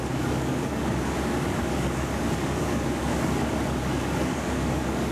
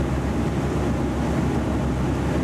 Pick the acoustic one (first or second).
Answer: second